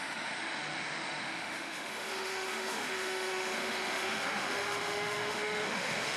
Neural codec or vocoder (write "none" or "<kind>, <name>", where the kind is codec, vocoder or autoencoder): autoencoder, DAC-VAE